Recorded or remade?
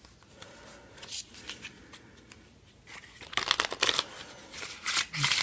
recorded